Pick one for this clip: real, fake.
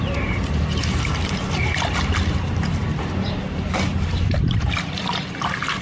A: fake